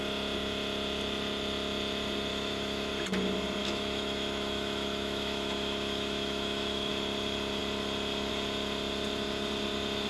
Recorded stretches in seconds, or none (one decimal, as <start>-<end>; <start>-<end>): 0.0-2.3; 2.9-3.6; 6.9-10.1